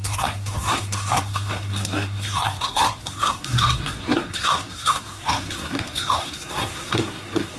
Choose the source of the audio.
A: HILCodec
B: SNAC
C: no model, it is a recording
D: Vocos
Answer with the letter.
B